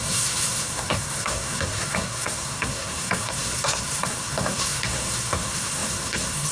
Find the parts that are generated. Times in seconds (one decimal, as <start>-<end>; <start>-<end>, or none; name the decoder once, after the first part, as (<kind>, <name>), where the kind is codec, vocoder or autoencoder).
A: 0.0-6.5 (codec, SNAC)